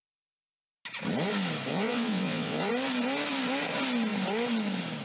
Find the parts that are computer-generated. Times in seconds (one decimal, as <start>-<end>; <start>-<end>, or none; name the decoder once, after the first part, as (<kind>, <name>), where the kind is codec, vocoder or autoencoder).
1.7-2.7 (vocoder, WaveNeXt)